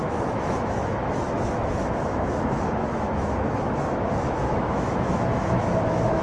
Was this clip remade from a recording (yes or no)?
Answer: yes